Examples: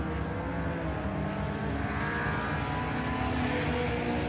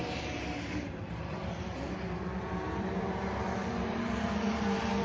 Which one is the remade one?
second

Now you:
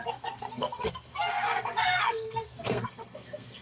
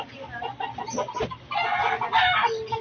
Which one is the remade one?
first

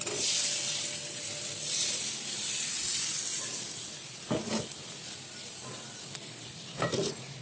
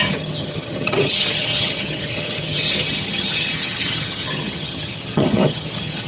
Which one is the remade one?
second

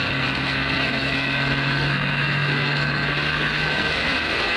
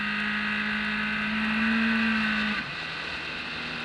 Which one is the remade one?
first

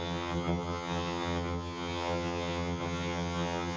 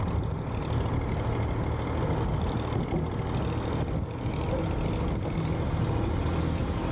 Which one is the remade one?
first